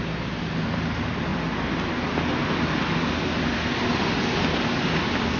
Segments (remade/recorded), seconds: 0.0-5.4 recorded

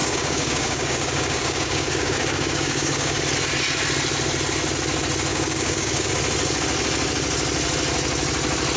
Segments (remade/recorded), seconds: 0.0-3.2 remade; 3.2-5.3 recorded; 5.3-6.1 remade; 6.1-8.8 recorded

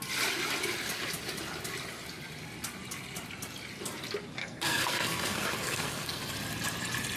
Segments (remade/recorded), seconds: 0.0-4.4 recorded; 4.4-6.2 remade; 6.2-7.2 recorded

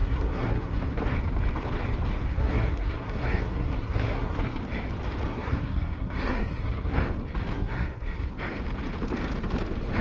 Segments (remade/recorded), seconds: 0.0-1.0 remade; 1.0-2.3 recorded; 2.3-4.6 remade; 4.6-5.3 recorded; 5.3-7.0 remade; 7.0-7.5 recorded; 7.5-8.3 remade; 8.3-10.0 recorded